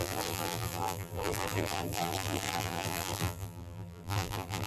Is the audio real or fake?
fake